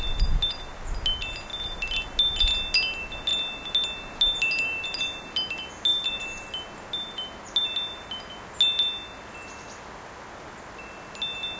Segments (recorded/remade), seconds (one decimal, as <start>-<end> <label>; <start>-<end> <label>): 0.0-11.6 recorded